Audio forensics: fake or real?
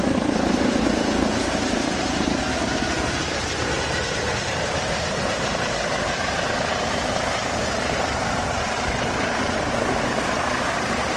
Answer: fake